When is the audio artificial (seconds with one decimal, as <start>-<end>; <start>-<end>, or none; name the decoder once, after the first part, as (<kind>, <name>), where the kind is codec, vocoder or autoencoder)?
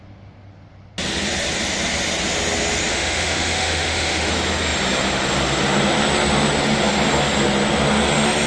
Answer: 2.9-4.3 (autoencoder, DAC-VAE)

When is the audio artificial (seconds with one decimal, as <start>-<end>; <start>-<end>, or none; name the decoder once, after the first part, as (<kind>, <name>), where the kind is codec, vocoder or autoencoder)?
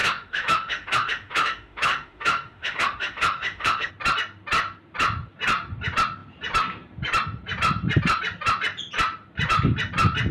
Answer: 0.0-3.9 (autoencoder, DAC-VAE)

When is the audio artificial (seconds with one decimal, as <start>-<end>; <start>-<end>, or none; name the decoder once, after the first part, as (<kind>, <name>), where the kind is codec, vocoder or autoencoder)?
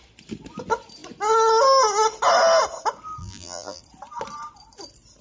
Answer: 3.2-3.8 (vocoder, BigVGAN v2)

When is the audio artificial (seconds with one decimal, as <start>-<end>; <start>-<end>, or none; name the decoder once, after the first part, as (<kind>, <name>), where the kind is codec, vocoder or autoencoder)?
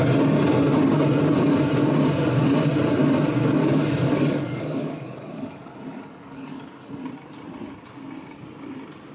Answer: 3.6-6.9 (codec, DAC)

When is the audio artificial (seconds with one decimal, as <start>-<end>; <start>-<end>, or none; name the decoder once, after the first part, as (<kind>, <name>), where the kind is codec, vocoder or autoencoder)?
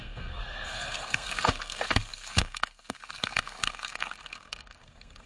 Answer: 0.0-5.3 (codec, SNAC)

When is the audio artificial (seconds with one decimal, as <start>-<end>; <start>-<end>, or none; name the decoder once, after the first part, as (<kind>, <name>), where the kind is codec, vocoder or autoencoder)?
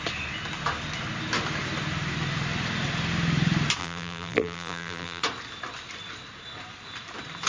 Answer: 3.8-5.2 (vocoder, BigVGAN v2)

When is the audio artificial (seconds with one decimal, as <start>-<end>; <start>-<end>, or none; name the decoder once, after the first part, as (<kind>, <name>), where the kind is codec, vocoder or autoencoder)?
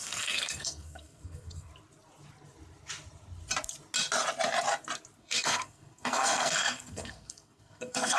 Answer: 0.0-1.7 (codec, SNAC); 5.2-8.2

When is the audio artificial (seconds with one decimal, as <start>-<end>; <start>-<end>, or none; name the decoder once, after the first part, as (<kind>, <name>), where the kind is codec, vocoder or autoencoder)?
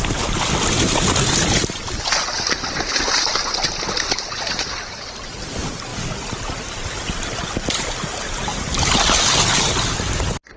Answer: none